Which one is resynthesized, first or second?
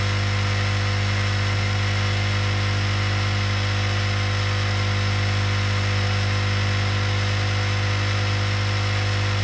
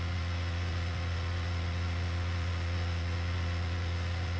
second